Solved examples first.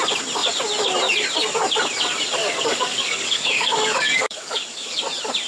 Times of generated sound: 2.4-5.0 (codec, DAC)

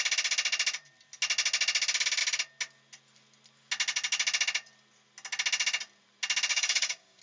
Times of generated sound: 6.5-7.2 (codec, DAC)

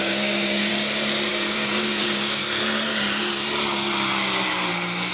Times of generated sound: 0.0-0.7 (codec, DAC); 1.3-2.4